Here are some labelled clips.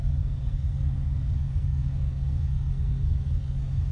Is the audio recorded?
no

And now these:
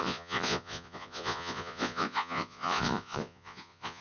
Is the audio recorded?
no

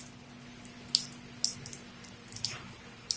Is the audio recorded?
yes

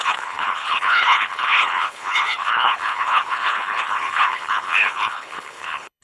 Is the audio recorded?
no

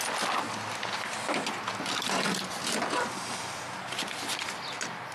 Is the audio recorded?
yes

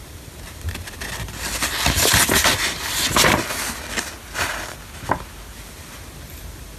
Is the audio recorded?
yes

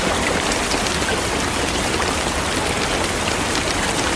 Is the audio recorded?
yes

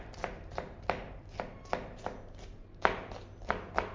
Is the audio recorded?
yes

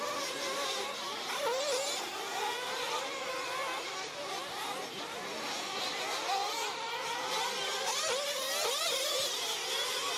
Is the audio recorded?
yes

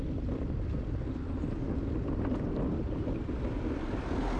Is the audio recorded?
yes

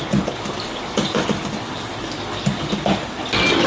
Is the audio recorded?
yes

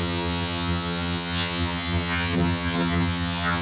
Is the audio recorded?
no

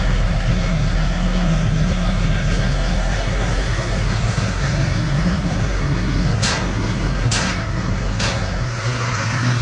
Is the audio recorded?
no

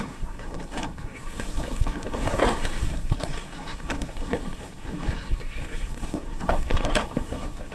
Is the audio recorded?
no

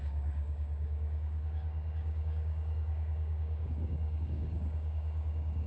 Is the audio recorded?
no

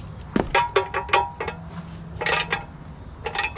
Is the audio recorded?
yes